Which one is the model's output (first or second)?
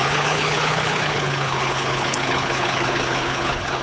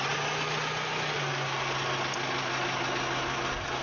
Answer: first